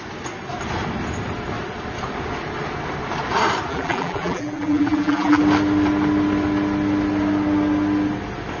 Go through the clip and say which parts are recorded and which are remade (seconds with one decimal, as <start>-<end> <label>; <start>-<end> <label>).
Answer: 0.0-3.7 recorded; 3.7-5.4 remade; 5.4-8.6 recorded